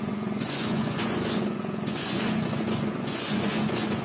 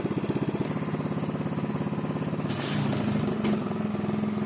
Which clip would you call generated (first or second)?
first